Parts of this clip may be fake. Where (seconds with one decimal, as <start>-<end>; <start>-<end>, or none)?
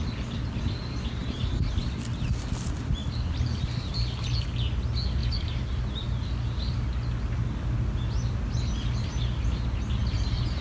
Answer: 1.2-1.8; 5.2-5.8